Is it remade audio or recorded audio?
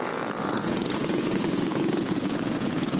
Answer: remade